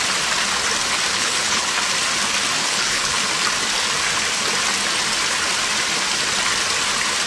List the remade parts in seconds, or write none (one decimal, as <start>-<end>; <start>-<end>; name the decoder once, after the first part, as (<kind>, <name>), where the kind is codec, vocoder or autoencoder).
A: 1.1-1.7 (codec, HILCodec); 2.6-3.2